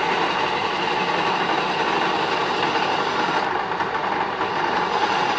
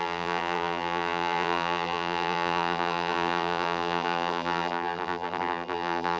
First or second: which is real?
first